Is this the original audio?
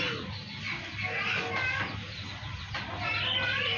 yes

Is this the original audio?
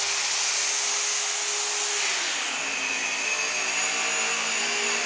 yes